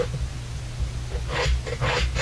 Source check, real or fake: real